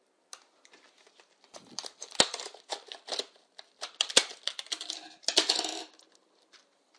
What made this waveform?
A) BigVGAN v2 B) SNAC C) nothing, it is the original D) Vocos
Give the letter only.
C